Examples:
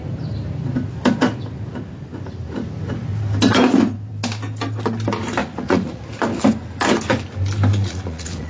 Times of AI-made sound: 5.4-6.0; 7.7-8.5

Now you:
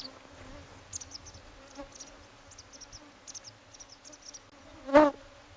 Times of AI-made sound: none

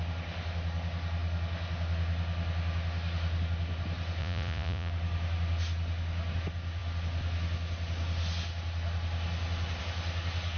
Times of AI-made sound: 4.2-4.9